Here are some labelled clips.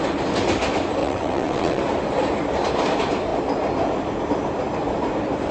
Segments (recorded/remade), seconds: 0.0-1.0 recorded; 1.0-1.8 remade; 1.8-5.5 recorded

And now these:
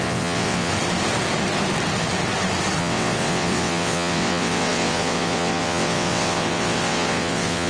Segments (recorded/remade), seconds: 0.0-0.7 remade; 0.7-2.8 recorded; 2.8-7.7 remade

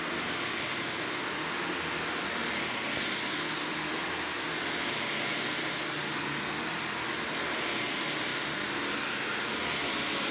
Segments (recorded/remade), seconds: 0.0-10.3 recorded

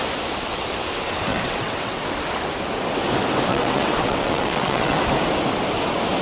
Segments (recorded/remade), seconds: 0.0-1.3 recorded; 1.3-2.0 remade; 2.0-3.5 recorded; 3.5-5.0 remade; 5.0-6.2 recorded